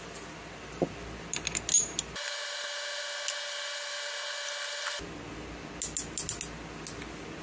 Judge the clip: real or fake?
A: real